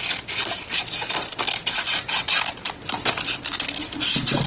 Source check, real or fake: real